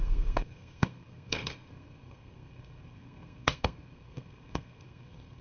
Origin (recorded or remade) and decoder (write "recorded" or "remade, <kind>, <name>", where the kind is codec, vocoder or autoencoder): remade, codec, SNAC